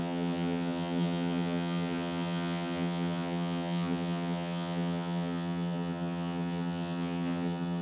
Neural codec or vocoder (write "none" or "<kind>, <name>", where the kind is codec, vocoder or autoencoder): vocoder, HiFi-GAN